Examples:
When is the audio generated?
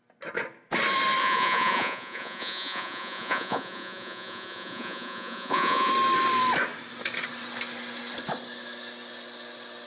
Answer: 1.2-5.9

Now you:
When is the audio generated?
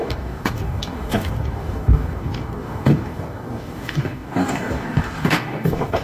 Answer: 0.0-6.0